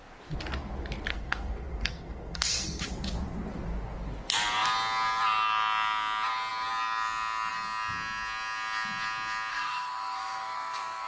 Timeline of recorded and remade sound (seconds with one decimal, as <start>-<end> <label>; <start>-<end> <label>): 0.0-1.1 recorded; 1.1-2.9 remade; 2.9-9.5 recorded; 9.5-11.1 remade